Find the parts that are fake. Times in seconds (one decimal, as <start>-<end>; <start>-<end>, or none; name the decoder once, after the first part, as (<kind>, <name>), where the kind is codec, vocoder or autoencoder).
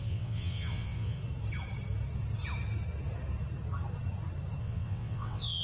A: 0.0-1.2 (vocoder, WaveNeXt); 4.6-5.6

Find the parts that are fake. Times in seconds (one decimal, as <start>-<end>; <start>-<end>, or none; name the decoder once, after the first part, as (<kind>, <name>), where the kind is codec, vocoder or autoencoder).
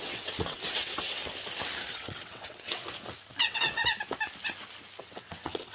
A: 0.0-1.2 (vocoder, WaveNeXt); 1.9-2.8; 3.4-3.8; 5.0-5.7